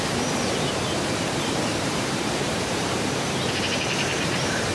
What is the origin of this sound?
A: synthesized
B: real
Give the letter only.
A